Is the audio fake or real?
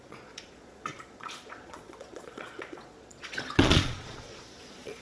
fake